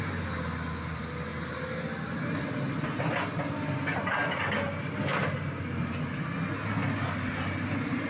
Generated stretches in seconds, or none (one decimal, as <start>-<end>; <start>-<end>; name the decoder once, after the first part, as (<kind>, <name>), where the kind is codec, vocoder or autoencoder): none